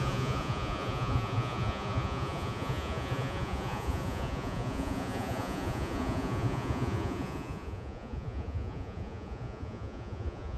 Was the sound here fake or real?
fake